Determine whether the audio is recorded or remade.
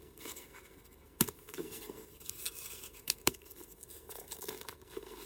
remade